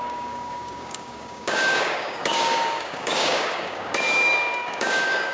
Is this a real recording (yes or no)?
no